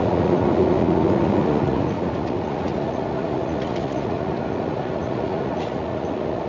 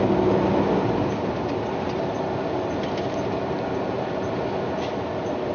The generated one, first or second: first